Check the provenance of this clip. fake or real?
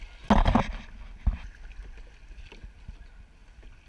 real